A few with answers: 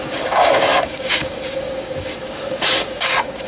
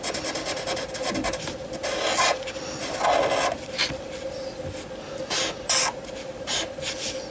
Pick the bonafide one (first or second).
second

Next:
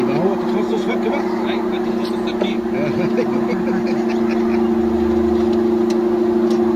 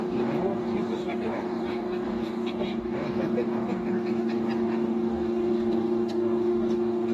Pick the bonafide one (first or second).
first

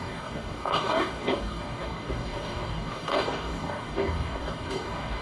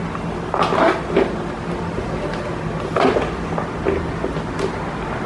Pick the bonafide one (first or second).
second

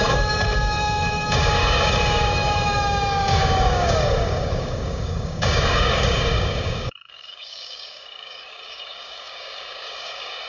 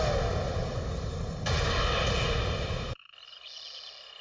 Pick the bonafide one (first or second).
second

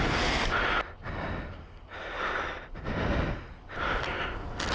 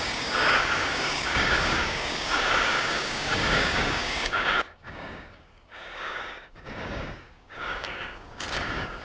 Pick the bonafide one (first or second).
first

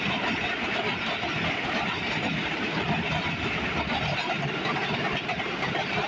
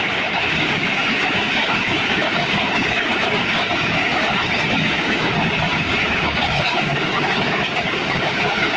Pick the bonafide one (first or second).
first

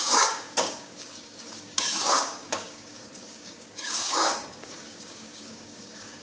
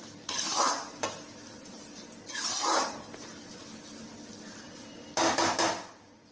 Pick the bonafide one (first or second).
second